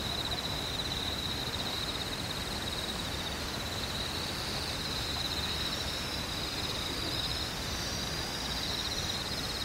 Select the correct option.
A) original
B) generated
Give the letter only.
A